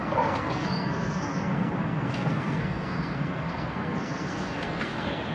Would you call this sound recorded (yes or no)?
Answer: no